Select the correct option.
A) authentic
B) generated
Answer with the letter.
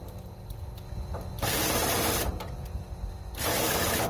A